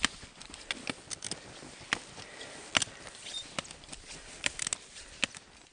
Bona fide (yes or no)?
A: yes